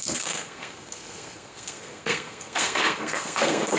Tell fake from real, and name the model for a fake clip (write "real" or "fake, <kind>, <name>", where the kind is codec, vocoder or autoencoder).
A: fake, codec, SNAC